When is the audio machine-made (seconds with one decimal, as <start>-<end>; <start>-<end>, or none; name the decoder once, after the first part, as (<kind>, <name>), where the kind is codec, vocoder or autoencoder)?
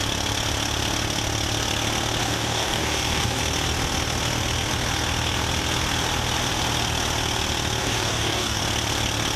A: 2.2-3.4 (codec, DAC); 7.8-8.6